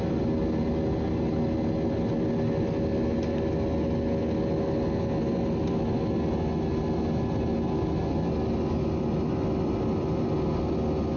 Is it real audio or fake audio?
real